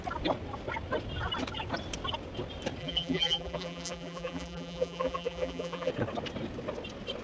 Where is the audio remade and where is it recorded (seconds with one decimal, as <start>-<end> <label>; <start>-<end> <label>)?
0.0-2.8 recorded; 2.8-5.9 remade; 5.9-7.2 recorded